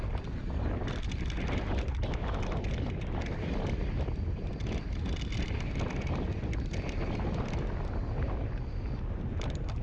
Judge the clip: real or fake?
real